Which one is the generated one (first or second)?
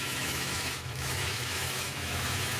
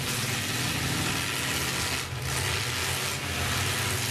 first